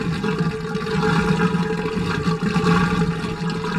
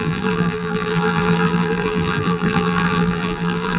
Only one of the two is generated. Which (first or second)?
second